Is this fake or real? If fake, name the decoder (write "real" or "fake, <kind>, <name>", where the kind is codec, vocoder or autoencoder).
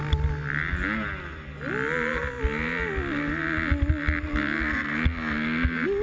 real